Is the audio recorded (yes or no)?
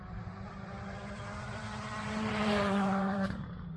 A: no